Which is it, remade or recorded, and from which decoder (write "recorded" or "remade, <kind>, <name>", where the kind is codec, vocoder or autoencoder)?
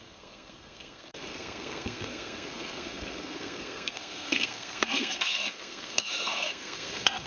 remade, codec, SNAC